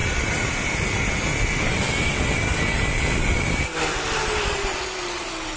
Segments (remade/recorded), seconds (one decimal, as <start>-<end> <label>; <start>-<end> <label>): 0.0-1.1 remade; 1.1-5.6 recorded